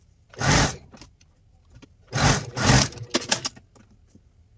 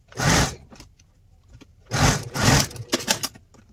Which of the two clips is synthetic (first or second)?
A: second